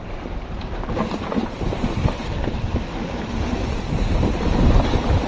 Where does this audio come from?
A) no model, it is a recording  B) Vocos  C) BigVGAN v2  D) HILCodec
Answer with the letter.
C